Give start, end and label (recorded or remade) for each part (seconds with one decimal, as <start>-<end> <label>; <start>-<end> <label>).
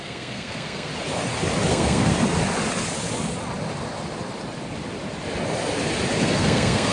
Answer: 0.0-0.9 remade; 0.9-1.7 recorded; 1.7-2.1 remade; 2.1-6.2 recorded; 6.2-6.9 remade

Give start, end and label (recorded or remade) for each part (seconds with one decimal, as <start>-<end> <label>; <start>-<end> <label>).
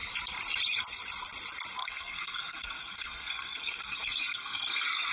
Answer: 0.0-1.8 recorded; 1.8-5.1 remade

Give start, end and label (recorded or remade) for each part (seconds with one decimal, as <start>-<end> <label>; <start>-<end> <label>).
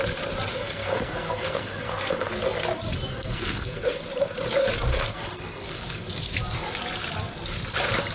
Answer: 0.0-0.5 recorded; 0.5-2.3 remade; 2.3-3.1 recorded; 3.1-4.0 remade; 4.0-4.9 recorded; 4.9-6.0 remade; 6.0-8.1 recorded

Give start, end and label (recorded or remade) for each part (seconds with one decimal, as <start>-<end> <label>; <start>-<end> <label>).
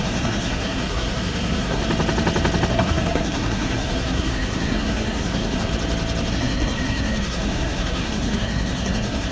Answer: 0.0-1.8 remade; 1.8-2.7 recorded; 2.7-5.7 remade; 5.7-6.3 recorded; 6.3-9.3 remade